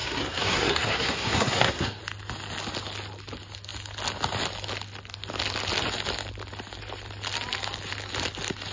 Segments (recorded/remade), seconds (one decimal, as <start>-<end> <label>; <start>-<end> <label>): 0.0-2.0 remade; 2.0-8.7 recorded